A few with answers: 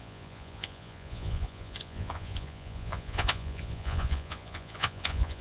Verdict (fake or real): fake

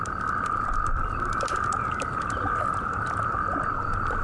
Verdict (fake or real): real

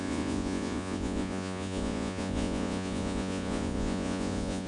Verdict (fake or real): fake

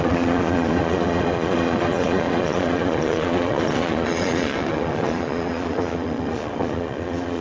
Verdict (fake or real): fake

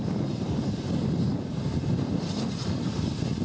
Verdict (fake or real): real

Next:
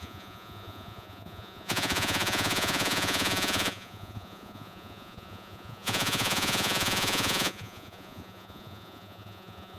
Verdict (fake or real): fake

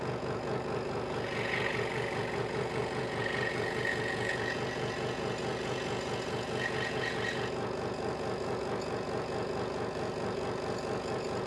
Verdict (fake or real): fake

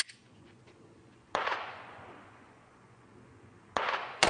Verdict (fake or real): fake